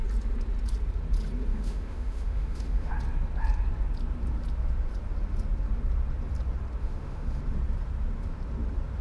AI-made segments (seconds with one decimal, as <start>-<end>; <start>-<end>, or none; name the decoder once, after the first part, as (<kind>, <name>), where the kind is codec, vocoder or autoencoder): 1.5-2.9 (autoencoder, DAC-VAE); 6.8-7.4